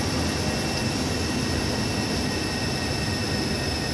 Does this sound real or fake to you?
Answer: real